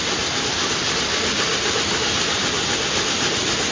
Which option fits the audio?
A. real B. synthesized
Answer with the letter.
A